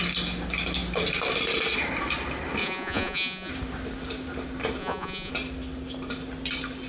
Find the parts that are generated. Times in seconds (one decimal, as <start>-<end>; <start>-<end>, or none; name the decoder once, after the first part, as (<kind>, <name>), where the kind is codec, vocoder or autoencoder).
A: 2.6-3.5 (vocoder, Vocos); 4.8-5.3